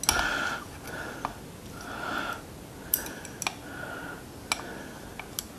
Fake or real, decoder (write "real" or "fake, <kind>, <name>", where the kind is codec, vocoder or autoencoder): real